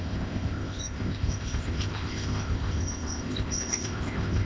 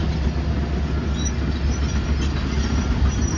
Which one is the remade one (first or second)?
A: first